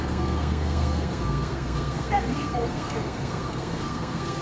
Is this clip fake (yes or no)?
yes